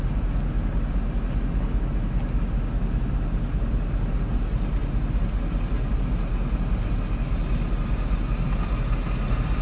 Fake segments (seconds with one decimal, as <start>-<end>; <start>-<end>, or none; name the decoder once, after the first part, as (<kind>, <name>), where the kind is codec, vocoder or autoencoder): none